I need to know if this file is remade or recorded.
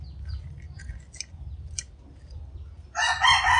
recorded